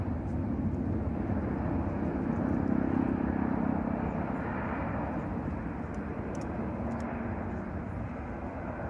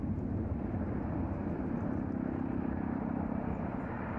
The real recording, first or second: first